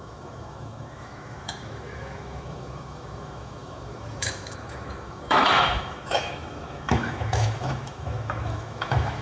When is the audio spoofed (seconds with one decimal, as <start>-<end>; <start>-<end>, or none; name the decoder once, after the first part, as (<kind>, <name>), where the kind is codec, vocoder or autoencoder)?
0.0-9.2 (autoencoder, DAC-VAE)